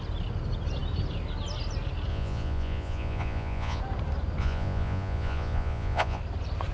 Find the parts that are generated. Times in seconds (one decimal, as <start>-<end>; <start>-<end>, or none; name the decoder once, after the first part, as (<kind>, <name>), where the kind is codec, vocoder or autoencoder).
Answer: 2.1-3.8 (vocoder, Vocos); 4.4-6.2